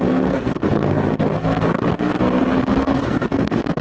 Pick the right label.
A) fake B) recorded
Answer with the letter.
A